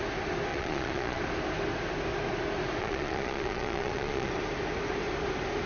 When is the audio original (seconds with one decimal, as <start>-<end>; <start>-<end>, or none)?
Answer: 0.0-0.5; 1.2-2.8; 4.3-5.7